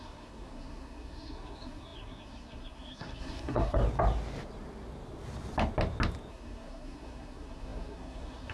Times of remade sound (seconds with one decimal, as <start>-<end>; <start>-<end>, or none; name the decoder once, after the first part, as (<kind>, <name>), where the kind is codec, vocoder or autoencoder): 0.0-3.8 (codec, SNAC); 6.3-8.5